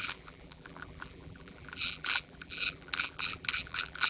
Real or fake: fake